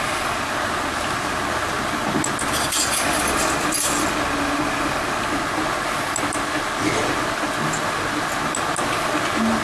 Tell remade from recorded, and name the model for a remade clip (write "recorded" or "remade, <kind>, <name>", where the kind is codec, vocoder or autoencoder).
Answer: recorded